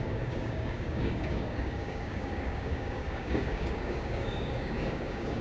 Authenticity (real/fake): fake